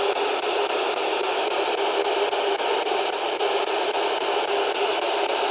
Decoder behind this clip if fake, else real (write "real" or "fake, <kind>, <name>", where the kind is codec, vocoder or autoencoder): real